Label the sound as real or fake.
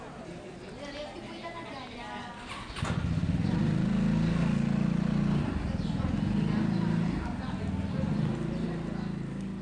real